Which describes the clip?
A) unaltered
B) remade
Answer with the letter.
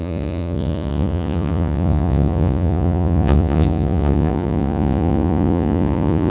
B